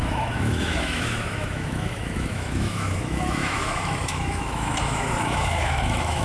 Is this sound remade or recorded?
remade